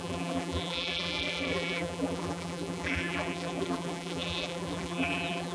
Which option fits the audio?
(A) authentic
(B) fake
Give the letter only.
B